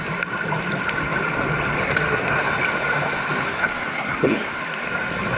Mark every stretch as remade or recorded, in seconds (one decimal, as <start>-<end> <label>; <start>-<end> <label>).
0.0-1.8 recorded; 1.8-2.5 remade; 2.5-3.4 recorded; 3.4-4.6 remade; 4.6-5.4 recorded

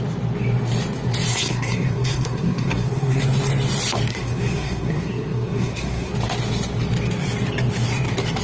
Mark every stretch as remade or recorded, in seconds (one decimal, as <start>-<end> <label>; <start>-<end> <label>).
0.0-1.3 recorded; 1.3-3.2 remade; 3.2-4.1 recorded; 4.1-6.1 remade; 6.1-8.4 recorded